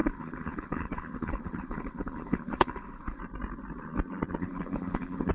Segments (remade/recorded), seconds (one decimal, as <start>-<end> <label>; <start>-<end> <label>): 0.0-3.2 remade; 3.2-4.4 recorded; 4.4-5.3 remade